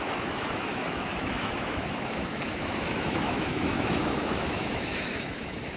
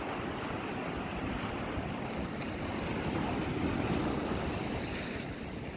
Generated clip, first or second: first